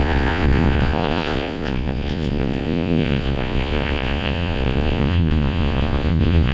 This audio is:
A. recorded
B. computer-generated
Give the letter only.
B